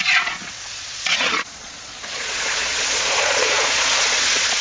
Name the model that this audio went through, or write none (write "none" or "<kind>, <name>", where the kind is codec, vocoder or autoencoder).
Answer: vocoder, Vocos